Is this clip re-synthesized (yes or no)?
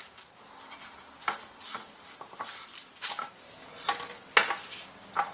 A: no